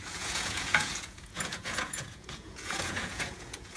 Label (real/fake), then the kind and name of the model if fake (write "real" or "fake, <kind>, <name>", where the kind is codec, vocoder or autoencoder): fake, vocoder, Vocos